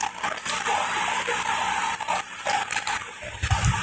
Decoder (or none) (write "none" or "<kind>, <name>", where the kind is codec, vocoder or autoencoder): none